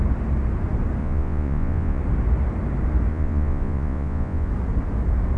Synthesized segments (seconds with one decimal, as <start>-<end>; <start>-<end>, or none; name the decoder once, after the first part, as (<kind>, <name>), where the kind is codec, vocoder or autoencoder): 1.0-2.0 (vocoder, Vocos); 3.1-4.5